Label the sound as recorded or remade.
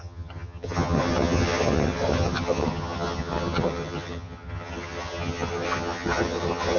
remade